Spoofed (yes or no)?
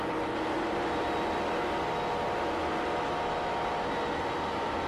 no